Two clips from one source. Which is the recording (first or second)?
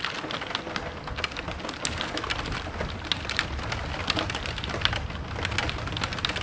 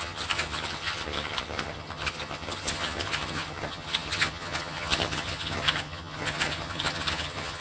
first